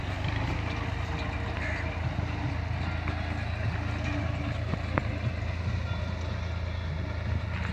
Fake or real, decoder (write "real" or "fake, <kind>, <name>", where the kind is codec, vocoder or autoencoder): real